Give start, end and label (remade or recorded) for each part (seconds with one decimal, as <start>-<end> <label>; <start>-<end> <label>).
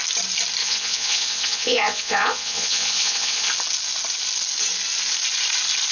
0.0-0.6 recorded; 0.6-3.5 remade; 3.5-5.9 recorded